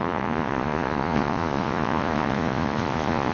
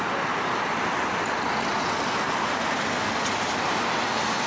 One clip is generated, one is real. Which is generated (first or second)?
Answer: first